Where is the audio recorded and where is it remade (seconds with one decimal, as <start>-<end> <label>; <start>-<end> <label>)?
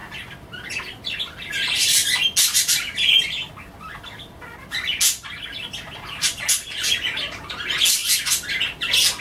0.0-9.2 recorded